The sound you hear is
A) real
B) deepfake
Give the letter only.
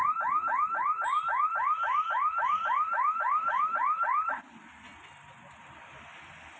A